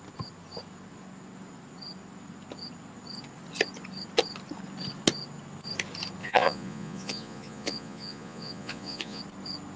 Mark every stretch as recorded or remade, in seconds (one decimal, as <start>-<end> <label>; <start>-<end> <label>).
0.0-6.2 recorded; 6.2-9.2 remade; 9.2-9.8 recorded

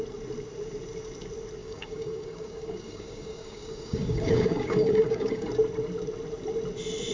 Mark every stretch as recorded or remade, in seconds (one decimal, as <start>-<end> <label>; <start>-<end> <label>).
0.0-1.6 recorded; 1.6-5.5 remade; 5.5-7.1 recorded

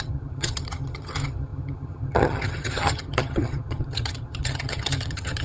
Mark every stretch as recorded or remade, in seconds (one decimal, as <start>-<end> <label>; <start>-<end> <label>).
0.0-5.4 remade

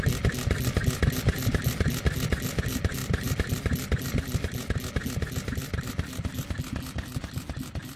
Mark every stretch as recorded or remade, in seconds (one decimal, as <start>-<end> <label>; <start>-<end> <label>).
0.0-8.0 recorded

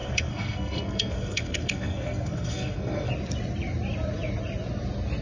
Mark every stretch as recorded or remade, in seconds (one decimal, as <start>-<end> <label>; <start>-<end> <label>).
0.0-3.1 remade; 3.1-5.2 recorded

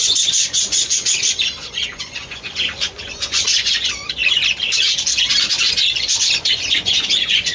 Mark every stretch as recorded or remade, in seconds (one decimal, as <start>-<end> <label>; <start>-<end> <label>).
0.0-4.2 remade; 4.2-6.4 recorded; 6.4-7.5 remade

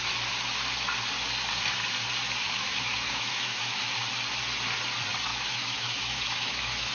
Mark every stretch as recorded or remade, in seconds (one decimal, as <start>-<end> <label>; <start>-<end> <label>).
0.0-2.4 recorded; 2.4-3.8 remade; 3.8-5.3 recorded; 5.3-6.9 remade